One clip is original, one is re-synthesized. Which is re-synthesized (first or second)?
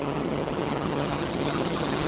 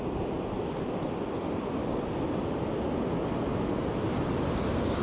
first